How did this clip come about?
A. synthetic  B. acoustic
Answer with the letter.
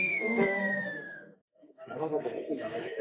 A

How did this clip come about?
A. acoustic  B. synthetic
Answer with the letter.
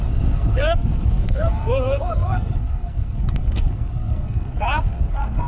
B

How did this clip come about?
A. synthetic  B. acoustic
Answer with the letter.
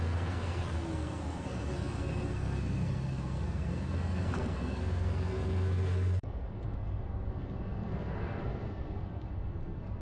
A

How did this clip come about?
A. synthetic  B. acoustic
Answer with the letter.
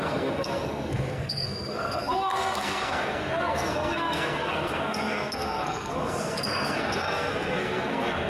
A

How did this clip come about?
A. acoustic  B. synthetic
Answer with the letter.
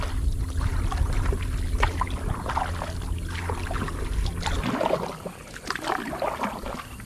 A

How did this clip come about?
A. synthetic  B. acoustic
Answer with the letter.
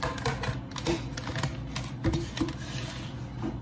B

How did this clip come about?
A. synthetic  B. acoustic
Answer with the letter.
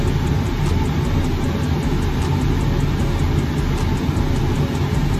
B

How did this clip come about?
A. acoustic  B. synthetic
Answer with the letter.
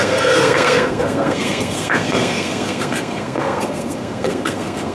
B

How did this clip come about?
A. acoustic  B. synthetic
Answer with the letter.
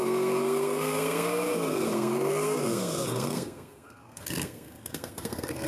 B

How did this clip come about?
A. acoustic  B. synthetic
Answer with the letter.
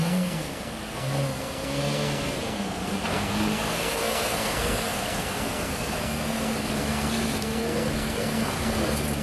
B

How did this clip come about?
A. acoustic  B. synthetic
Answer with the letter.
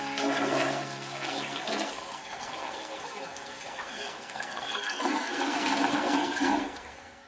B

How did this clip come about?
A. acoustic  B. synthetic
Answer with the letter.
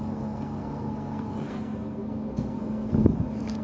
B